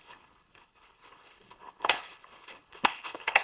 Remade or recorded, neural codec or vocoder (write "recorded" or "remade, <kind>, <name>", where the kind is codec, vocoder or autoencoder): remade, codec, HILCodec